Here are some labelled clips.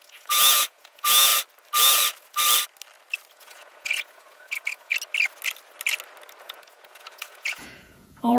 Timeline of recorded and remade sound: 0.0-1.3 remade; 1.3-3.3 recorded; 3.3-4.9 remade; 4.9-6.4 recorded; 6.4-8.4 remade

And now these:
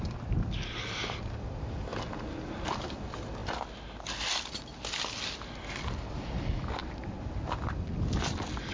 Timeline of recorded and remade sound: 0.0-8.7 recorded

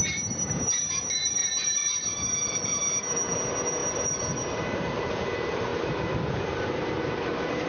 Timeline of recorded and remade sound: 0.0-1.4 remade; 1.4-2.7 recorded; 2.7-7.7 remade

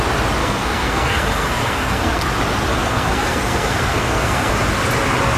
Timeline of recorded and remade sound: 0.0-0.4 recorded; 0.4-2.2 remade; 2.2-2.7 recorded; 2.7-4.5 remade; 4.5-5.4 recorded

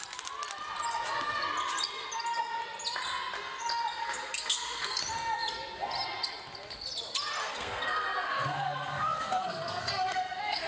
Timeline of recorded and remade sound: 0.0-4.0 recorded; 4.0-5.0 remade; 5.0-7.4 recorded; 7.4-10.7 remade

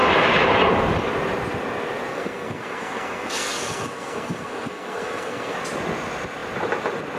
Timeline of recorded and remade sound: 0.0-2.1 recorded; 2.1-5.6 remade; 5.6-7.2 recorded